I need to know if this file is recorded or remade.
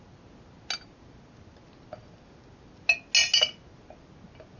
recorded